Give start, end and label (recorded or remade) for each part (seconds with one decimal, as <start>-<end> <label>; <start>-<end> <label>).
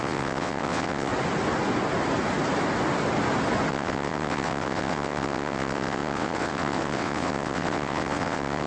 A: 0.0-1.1 remade; 1.1-3.7 recorded; 3.7-8.7 remade